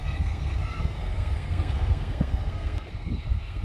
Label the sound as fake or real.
fake